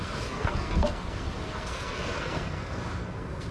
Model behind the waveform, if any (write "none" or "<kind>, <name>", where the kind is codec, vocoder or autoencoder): codec, SNAC